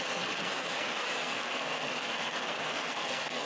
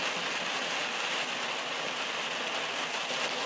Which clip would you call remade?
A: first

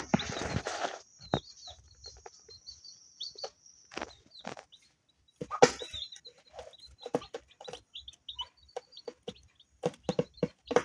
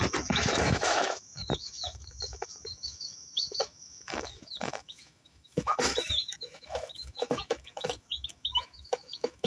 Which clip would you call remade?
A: second